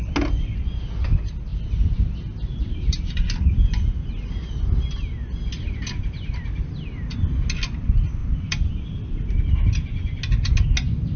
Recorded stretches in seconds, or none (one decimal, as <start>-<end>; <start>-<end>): 0.0-1.5; 4.8-8.2; 8.7-11.2